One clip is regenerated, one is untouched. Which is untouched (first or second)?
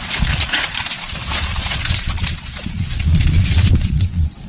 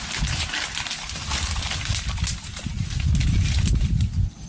second